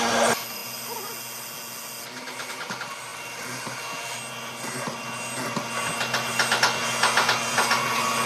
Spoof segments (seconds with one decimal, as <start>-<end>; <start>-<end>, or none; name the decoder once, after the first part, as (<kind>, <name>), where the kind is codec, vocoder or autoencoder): none